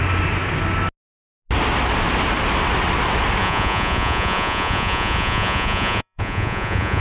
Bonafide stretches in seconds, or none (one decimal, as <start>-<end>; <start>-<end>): 0.0-3.4